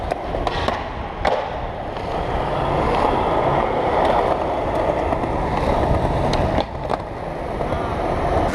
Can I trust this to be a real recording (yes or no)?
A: yes